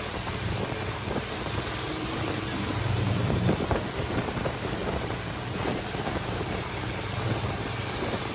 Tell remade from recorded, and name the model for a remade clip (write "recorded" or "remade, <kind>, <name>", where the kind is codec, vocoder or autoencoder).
remade, vocoder, BigVGAN v2